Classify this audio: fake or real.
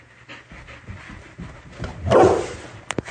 real